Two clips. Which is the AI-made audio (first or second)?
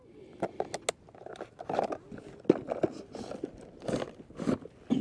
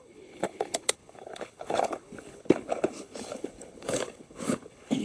second